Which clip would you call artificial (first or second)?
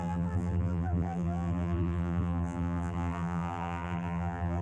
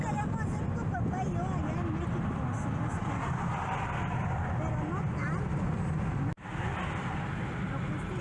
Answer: first